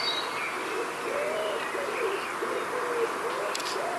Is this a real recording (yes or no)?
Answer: yes